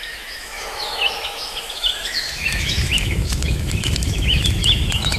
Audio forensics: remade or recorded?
remade